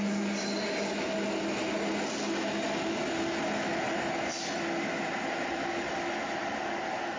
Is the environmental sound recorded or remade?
recorded